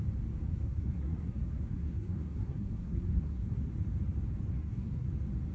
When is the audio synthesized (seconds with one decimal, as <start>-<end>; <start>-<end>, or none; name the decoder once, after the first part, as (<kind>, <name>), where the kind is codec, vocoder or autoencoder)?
0.4-3.7 (codec, SNAC); 4.5-5.1